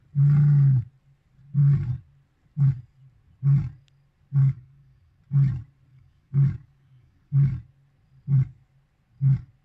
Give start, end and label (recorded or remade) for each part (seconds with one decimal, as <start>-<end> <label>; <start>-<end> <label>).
0.0-4.4 recorded; 4.4-5.2 remade; 5.2-5.9 recorded; 5.9-7.5 remade; 7.5-9.6 recorded